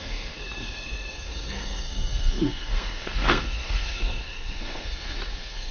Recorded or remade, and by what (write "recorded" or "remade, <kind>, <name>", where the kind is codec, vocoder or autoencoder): remade, codec, SNAC